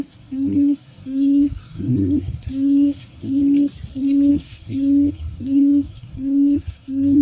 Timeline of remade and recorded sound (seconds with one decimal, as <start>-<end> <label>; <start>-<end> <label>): 0.0-3.4 remade; 3.4-3.9 recorded; 3.9-7.2 remade